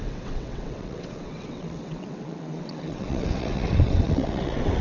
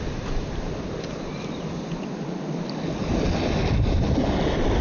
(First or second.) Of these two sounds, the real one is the second